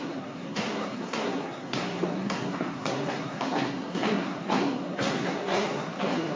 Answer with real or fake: fake